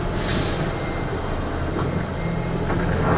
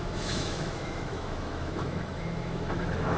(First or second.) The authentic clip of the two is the first